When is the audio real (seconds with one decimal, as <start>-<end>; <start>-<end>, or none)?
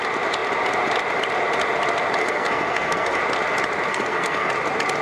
0.0-2.2; 3.2-3.9; 4.5-5.0